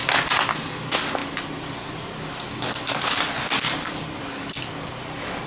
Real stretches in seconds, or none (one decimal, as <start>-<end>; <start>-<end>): 0.0-5.5